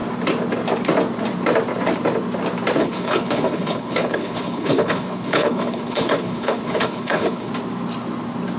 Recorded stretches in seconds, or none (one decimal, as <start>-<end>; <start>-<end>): 0.0-2.8; 7.5-8.6